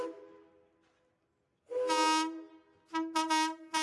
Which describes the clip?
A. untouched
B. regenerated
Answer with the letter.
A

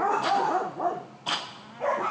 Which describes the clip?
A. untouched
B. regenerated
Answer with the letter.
A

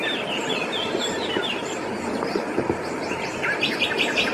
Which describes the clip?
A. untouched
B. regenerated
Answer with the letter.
A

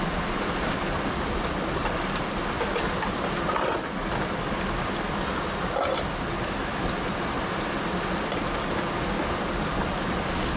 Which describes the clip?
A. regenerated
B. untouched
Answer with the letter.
B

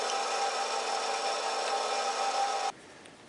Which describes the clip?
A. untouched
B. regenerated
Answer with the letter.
A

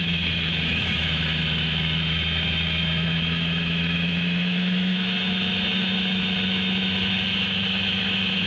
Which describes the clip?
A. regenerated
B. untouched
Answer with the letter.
A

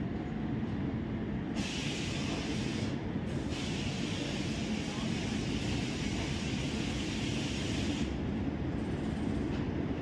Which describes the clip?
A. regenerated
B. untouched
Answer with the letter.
B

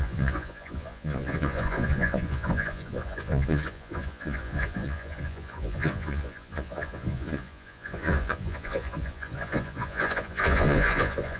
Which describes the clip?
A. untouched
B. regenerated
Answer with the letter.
B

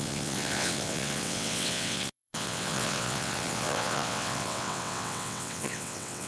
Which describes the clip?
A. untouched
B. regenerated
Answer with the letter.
B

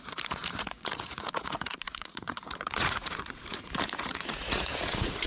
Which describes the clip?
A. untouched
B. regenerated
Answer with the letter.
B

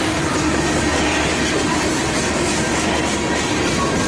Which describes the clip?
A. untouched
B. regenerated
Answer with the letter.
A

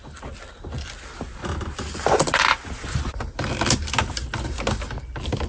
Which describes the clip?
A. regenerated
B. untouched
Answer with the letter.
B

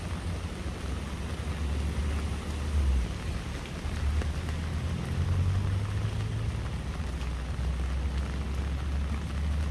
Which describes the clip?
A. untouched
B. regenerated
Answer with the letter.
A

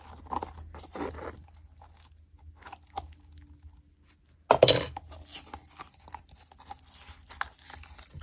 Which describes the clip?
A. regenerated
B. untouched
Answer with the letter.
B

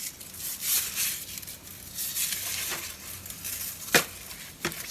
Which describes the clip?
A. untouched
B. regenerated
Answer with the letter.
A